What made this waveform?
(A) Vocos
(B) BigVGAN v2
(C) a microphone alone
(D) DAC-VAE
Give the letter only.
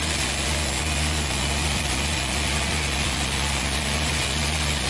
A